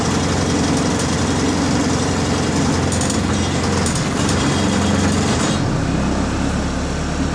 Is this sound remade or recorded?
recorded